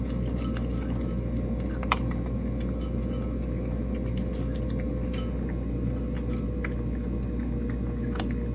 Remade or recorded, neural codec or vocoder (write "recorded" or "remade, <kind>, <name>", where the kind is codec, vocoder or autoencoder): recorded